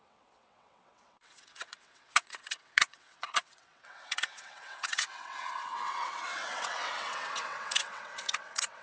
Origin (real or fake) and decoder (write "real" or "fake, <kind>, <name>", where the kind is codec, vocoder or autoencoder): fake, vocoder, WaveNeXt